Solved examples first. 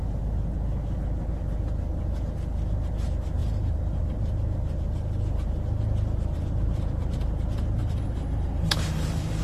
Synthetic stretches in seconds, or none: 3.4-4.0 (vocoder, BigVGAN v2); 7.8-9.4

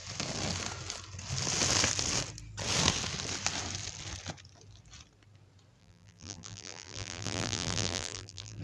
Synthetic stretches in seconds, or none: 5.8-8.6 (vocoder, BigVGAN v2)